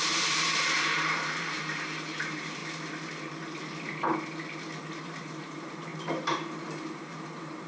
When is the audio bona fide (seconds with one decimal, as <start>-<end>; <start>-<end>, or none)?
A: 2.6-5.0